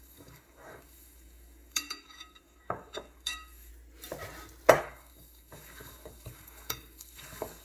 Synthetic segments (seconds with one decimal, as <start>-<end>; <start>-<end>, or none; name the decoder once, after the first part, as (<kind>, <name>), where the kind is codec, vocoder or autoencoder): 0.0-3.7 (codec, DAC); 4.8-7.6